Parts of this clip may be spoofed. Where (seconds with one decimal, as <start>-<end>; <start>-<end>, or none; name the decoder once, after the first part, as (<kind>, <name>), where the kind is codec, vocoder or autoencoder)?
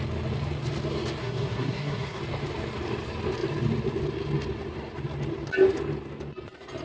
1.2-2.2 (codec, SNAC)